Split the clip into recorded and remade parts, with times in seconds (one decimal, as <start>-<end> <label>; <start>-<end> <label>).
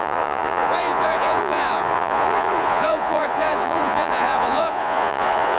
0.0-5.6 remade